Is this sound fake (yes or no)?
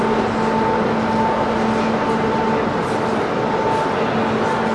no